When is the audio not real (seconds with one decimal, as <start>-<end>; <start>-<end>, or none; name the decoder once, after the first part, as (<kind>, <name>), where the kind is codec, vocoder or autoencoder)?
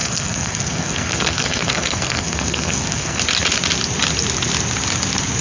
0.0-3.2 (codec, SNAC)